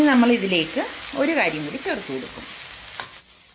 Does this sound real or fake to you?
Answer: real